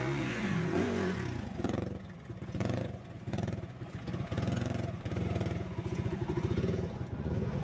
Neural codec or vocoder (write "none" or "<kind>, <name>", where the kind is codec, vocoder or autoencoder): vocoder, Vocos